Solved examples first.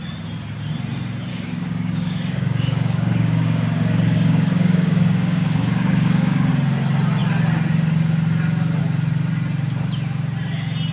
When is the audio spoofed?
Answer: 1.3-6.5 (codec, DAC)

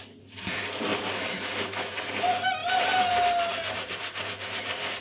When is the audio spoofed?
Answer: none

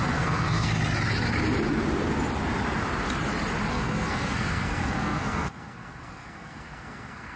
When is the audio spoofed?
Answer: 0.0-0.7 (codec, SNAC); 3.7-7.4

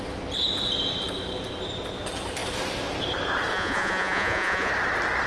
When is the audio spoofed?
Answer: 3.5-4.7 (vocoder, Vocos)